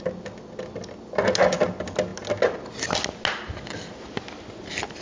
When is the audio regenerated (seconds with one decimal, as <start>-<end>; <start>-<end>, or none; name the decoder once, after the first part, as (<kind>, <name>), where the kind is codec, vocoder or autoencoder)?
none